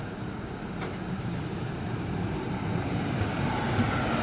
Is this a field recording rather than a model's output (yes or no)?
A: no